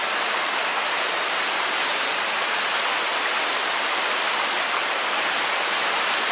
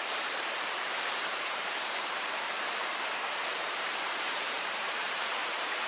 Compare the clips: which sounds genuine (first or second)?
first